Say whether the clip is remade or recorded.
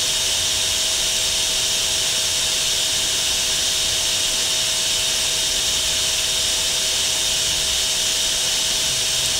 recorded